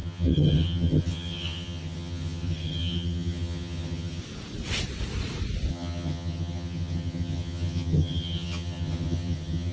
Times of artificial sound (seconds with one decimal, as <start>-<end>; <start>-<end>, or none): 0.0-4.2; 5.7-9.7